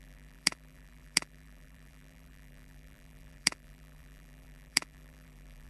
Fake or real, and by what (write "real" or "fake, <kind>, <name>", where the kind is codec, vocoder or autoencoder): fake, vocoder, BigVGAN v2